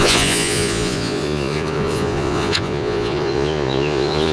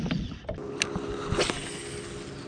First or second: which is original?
second